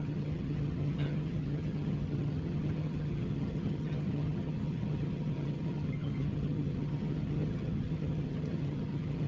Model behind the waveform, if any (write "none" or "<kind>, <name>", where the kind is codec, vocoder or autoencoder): vocoder, HiFi-GAN